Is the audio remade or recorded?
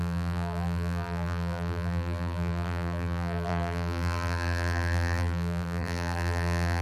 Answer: remade